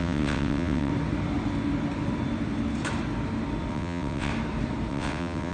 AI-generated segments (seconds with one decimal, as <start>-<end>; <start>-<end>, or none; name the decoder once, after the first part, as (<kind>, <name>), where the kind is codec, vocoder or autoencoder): 0.0-0.9 (vocoder, WaveNeXt); 3.7-4.3; 4.9-5.5